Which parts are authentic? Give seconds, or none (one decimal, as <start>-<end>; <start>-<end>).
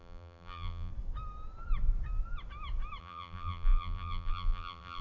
0.9-3.0